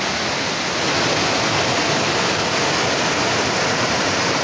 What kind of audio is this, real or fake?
real